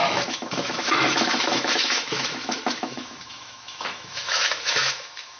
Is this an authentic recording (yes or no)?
no